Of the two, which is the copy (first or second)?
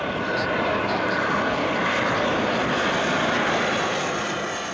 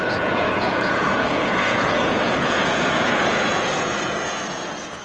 second